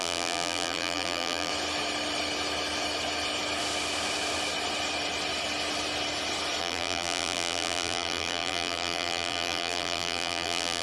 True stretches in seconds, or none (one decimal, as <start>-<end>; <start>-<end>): 1.5-6.6